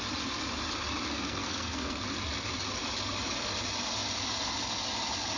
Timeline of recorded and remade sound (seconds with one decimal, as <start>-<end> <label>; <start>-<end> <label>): 0.0-1.1 recorded; 1.1-2.0 remade; 2.0-5.4 recorded